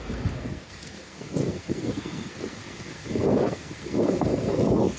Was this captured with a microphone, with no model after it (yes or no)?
no